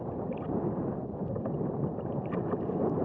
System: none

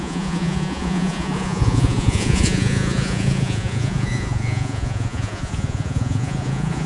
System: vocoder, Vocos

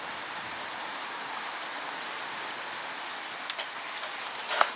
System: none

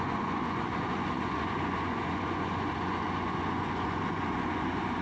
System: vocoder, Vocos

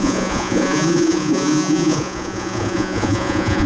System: vocoder, Vocos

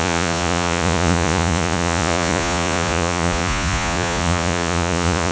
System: vocoder, Vocos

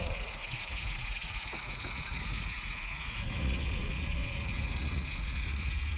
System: vocoder, Vocos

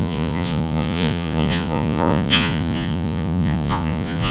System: vocoder, Vocos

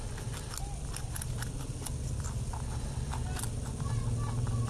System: none